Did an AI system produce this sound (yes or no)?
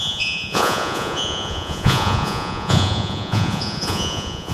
yes